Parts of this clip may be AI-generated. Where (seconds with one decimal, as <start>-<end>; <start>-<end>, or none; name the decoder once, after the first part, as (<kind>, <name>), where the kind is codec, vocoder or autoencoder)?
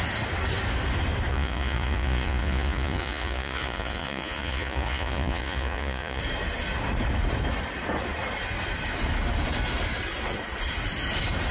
1.3-6.2 (vocoder, Vocos)